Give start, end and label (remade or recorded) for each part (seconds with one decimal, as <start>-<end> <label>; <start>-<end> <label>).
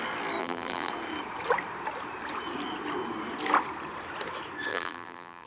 0.0-0.4 recorded; 0.4-0.9 remade; 0.9-4.7 recorded; 4.7-5.5 remade